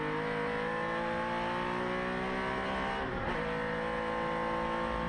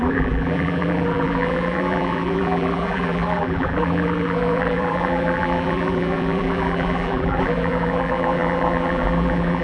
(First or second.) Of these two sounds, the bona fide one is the first